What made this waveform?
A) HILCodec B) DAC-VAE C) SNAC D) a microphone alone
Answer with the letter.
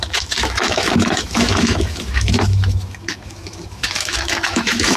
B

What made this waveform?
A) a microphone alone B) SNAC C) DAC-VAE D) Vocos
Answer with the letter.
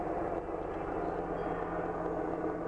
A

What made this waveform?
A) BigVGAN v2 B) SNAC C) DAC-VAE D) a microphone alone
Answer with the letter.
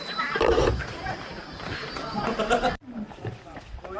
D